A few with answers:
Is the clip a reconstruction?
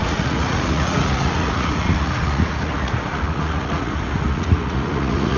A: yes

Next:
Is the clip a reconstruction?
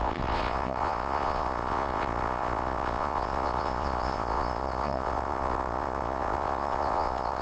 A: yes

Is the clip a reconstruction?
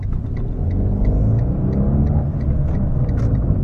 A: no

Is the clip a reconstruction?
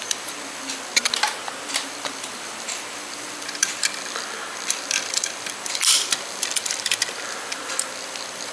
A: yes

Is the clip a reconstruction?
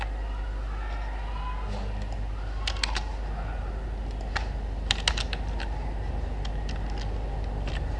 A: no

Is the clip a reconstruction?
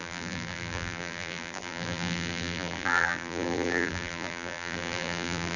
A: yes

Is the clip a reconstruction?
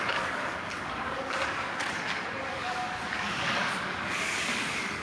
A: yes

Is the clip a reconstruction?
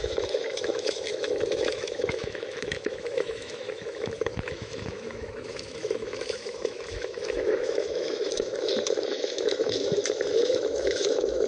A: yes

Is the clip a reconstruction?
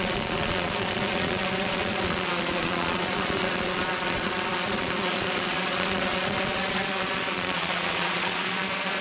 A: yes